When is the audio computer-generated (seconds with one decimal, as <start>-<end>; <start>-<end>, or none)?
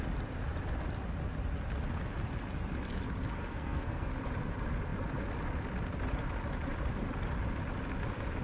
3.4-4.1